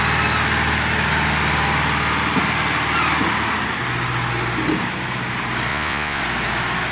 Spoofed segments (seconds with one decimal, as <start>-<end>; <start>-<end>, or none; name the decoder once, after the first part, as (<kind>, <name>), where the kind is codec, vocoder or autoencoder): 5.7-6.2 (vocoder, Vocos)